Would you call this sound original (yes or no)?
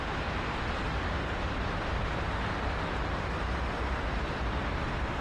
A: no